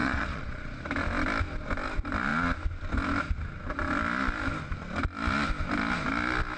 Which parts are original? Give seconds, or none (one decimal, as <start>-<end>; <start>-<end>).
0.8-6.6